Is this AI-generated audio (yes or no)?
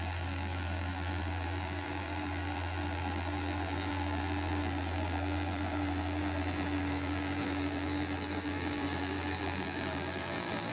yes